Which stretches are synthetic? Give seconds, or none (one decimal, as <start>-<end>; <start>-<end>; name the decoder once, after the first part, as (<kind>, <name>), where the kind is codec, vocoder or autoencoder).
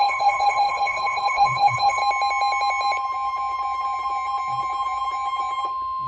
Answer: 0.0-2.0 (codec, HILCodec)